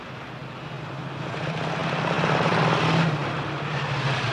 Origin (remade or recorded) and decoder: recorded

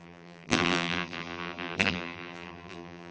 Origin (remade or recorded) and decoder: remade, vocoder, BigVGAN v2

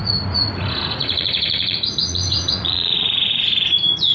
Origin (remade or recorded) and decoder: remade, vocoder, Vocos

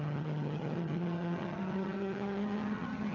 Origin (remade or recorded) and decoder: remade, vocoder, HiFi-GAN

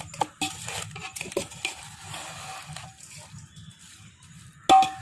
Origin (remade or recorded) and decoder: recorded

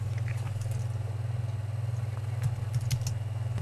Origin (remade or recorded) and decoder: recorded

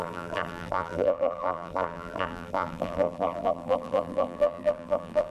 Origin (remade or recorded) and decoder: remade, vocoder, BigVGAN v2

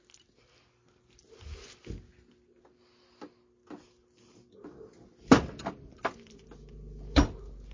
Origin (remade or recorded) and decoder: recorded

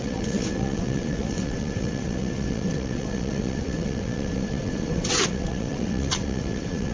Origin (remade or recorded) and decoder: remade, vocoder, WaveNeXt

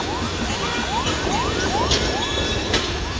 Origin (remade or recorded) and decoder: recorded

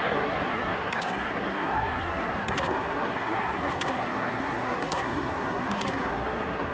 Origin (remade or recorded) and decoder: remade, codec, SNAC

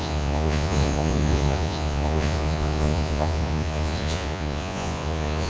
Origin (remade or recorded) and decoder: remade, vocoder, Vocos